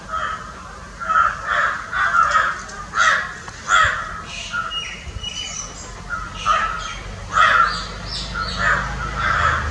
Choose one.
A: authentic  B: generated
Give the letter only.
A